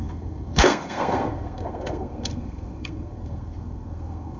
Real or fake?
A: fake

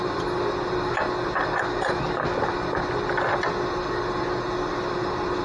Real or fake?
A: real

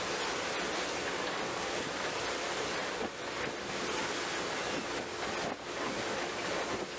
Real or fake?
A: real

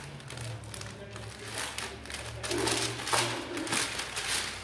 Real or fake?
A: real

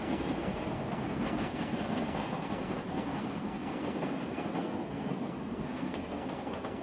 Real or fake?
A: fake